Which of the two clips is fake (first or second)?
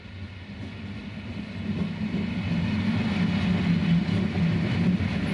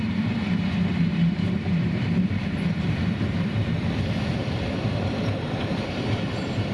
second